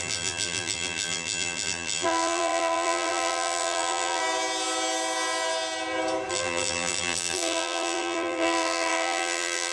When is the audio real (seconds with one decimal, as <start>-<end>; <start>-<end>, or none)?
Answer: 4.2-6.3